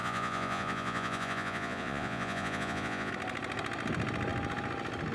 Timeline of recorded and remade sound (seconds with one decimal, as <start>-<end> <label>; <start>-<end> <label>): 0.0-3.1 remade; 3.1-5.1 recorded